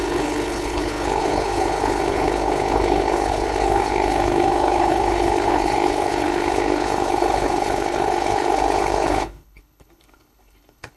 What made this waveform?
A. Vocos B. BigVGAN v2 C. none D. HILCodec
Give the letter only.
D